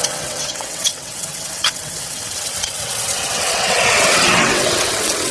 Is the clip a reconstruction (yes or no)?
yes